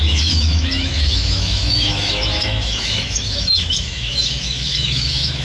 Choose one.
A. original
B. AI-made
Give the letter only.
B